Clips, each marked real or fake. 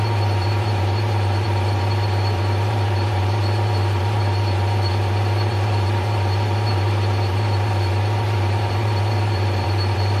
fake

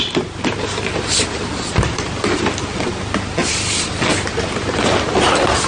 real